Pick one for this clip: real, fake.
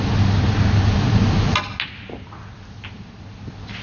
real